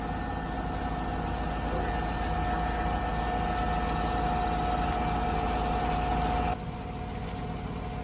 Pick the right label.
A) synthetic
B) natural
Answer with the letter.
B